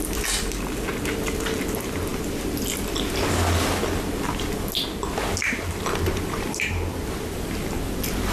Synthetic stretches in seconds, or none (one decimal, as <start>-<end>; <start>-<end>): 5.4-7.7

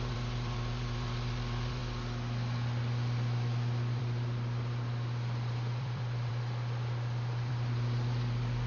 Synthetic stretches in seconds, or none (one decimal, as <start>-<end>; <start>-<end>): 0.0-1.8; 4.0-6.3; 7.5-8.7

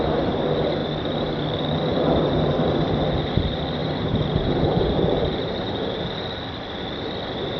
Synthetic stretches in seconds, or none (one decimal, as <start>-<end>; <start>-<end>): 1.9-2.9; 3.8-6.3

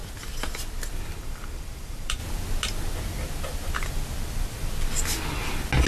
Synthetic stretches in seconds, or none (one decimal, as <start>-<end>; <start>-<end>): 1.2-2.2

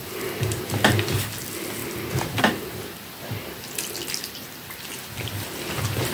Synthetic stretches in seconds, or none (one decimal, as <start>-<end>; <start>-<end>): 1.8-2.4